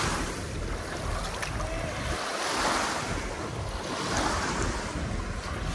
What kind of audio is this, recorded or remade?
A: recorded